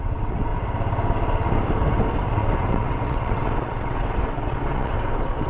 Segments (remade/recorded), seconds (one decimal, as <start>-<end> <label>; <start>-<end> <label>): 0.0-0.5 remade; 0.5-2.2 recorded; 2.2-5.5 remade